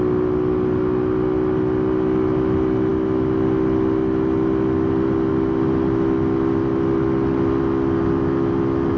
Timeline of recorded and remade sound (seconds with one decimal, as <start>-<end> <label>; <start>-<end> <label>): 0.0-9.0 recorded